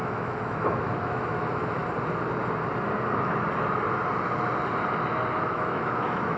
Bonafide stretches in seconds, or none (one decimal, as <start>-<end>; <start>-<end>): 1.8-5.4